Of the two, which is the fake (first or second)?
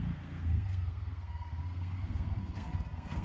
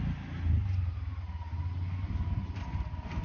first